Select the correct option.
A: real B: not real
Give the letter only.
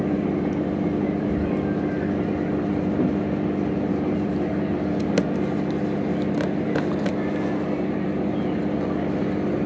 A